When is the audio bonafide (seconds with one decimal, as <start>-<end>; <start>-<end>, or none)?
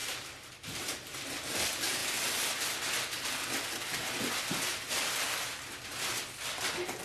1.3-4.7; 6.2-7.0